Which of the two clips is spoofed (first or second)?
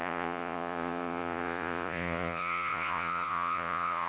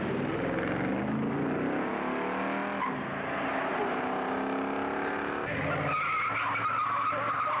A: first